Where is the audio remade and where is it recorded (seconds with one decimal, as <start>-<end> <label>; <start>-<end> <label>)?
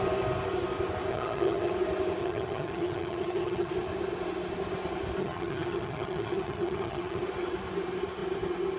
0.0-1.1 recorded; 1.1-1.7 remade; 1.7-2.2 recorded; 2.2-3.7 remade; 3.7-5.2 recorded; 5.2-7.2 remade; 7.2-8.8 recorded